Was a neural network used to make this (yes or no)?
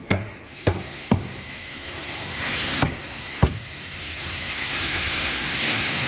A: yes